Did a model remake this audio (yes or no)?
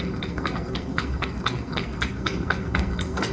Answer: yes